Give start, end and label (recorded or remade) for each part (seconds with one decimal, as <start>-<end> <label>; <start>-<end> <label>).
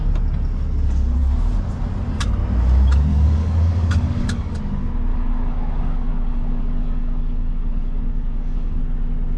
0.0-3.1 recorded; 3.1-4.6 remade; 4.6-5.1 recorded; 5.1-8.8 remade; 8.8-9.4 recorded